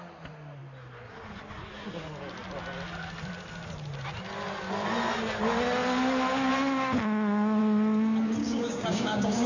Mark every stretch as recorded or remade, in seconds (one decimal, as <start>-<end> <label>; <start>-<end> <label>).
0.0-8.4 recorded; 8.4-9.5 remade

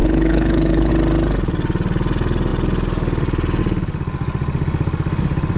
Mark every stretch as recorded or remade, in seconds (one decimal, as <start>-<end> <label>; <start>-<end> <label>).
0.0-0.9 remade; 0.9-5.6 recorded

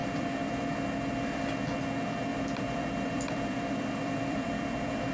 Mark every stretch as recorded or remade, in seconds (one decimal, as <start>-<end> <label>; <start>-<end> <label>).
0.0-0.7 remade; 0.7-2.3 recorded; 2.3-5.1 remade

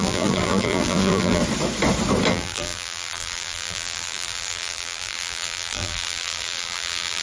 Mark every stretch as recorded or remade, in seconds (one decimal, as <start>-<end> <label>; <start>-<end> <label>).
0.0-1.4 remade; 1.4-2.3 recorded; 2.3-7.2 remade

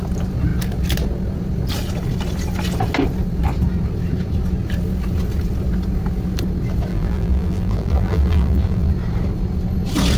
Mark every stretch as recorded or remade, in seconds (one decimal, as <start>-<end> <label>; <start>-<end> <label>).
0.0-6.9 recorded; 6.9-8.9 remade; 8.9-10.2 recorded

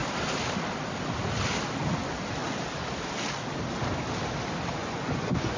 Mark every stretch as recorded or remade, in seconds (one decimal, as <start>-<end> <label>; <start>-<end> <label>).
0.0-4.8 recorded; 4.8-5.6 remade

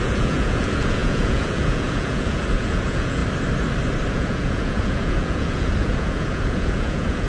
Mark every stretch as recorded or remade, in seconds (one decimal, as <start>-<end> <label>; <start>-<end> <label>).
0.0-3.2 remade; 3.2-4.1 recorded; 4.1-7.3 remade

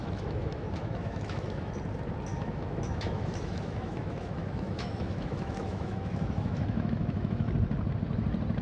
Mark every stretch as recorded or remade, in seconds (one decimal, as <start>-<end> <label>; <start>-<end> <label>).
0.0-1.7 remade; 1.7-2.3 recorded; 2.3-7.5 remade; 7.5-8.6 recorded